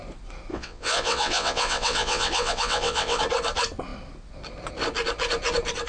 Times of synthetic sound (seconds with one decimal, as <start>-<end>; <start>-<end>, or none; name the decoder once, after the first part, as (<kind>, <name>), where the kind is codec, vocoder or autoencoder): 0.5-3.2 (vocoder, WaveNeXt)